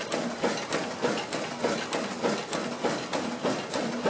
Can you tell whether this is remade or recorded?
recorded